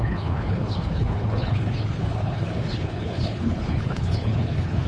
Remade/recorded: remade